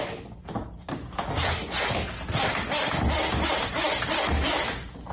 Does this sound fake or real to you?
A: real